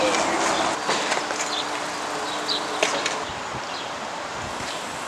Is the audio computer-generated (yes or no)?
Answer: no